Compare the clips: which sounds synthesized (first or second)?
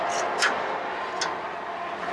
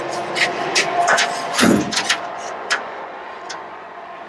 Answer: second